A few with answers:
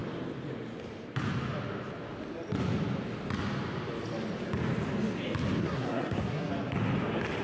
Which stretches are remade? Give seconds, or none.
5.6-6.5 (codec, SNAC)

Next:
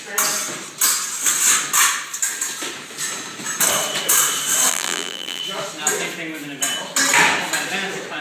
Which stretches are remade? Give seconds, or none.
4.7-5.4 (vocoder, BigVGAN v2)

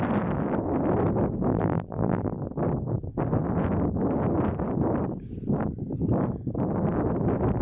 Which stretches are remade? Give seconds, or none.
1.5-2.4 (vocoder, BigVGAN v2)

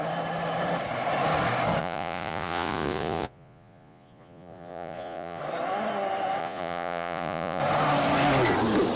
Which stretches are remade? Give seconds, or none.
1.8-5.4 (vocoder, Vocos); 6.4-7.6

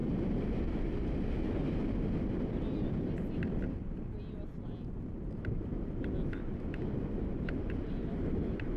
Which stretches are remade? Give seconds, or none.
4.9-5.7 (vocoder, BigVGAN v2); 7.6-8.8

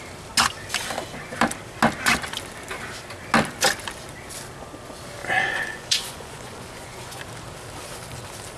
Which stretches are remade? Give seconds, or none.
5.2-7.2 (vocoder, Vocos)

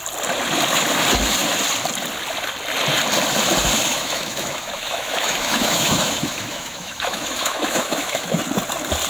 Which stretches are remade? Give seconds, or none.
3.9-8.4 (autoencoder, DAC-VAE)